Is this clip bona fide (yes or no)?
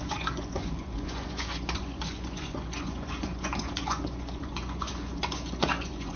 no